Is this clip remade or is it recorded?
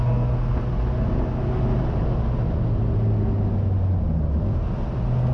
recorded